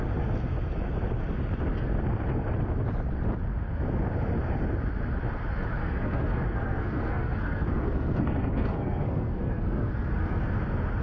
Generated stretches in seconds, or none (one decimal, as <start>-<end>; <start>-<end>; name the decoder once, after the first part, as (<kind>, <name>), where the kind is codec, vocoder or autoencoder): 5.8-10.4 (codec, SNAC)